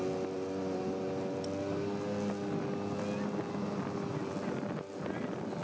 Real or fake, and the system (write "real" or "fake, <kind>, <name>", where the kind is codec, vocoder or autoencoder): real